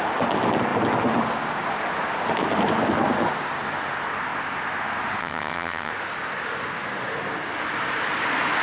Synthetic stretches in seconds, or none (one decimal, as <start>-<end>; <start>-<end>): 5.2-5.9